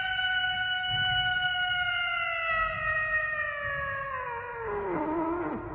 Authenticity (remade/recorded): recorded